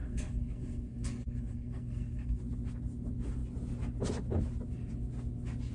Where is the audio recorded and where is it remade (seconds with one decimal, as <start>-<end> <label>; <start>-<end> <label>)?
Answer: 0.0-2.4 remade; 2.4-5.7 recorded